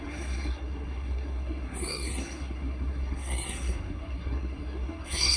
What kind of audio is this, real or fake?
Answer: fake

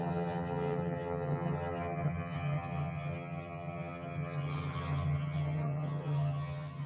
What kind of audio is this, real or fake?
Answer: fake